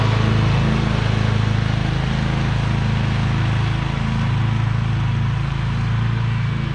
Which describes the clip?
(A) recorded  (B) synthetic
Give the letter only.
A